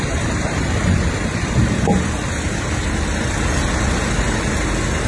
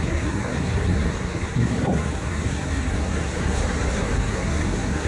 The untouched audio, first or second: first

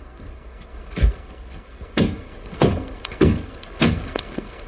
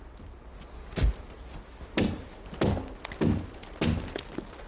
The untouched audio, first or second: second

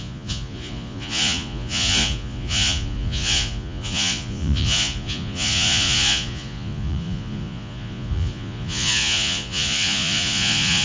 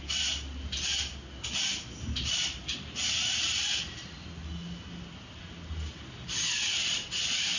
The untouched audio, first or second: second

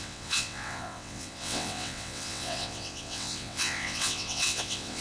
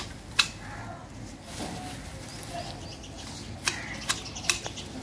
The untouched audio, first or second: second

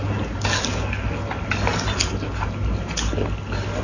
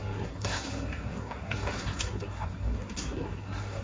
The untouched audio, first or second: first